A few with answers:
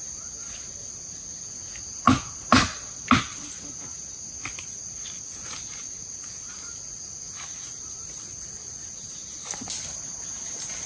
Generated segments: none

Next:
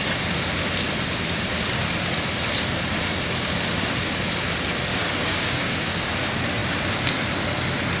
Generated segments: 4.9-6.1 (codec, DAC)

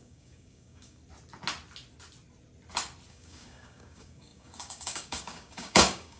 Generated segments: 0.0-1.0 (codec, DAC); 3.1-6.2

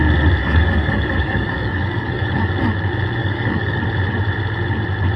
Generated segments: 0.4-2.5 (codec, DAC); 3.2-3.8

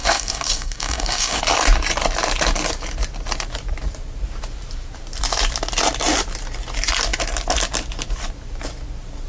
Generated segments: 0.0-1.4 (codec, DAC)